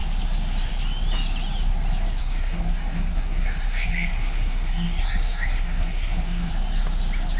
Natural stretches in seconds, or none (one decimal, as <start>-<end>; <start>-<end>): 0.0-2.2; 6.5-7.4

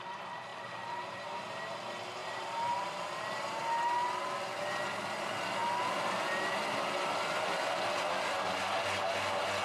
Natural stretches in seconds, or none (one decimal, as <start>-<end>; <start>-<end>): 0.0-0.5; 1.4-2.2; 3.6-4.0; 4.6-9.6

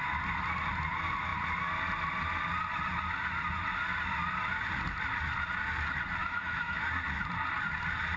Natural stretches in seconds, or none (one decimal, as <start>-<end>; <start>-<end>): 0.0-6.2; 6.8-8.2

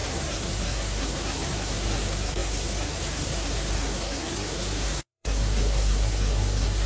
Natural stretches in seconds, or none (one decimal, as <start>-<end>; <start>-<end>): none

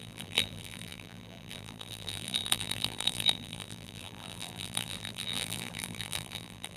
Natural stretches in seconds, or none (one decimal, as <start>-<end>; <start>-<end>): none